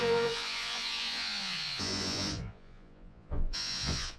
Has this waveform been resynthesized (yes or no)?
yes